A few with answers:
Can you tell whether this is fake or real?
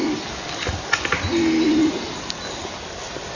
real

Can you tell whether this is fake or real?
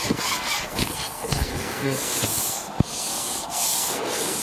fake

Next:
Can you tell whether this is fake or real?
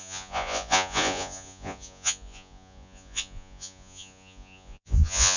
fake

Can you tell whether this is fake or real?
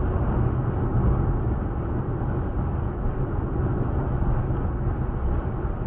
real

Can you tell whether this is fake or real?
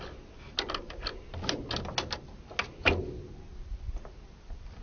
real